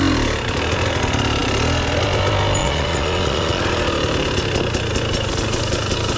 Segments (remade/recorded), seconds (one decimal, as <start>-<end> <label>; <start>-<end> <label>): 0.0-2.6 recorded; 2.6-3.6 remade; 3.6-6.2 recorded